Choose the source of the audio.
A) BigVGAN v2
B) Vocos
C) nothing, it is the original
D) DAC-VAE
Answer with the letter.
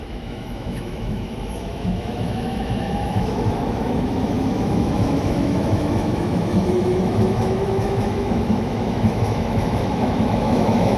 D